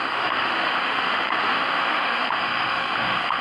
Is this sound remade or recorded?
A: remade